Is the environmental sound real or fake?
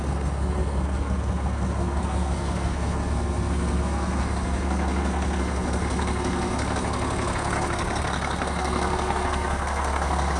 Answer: fake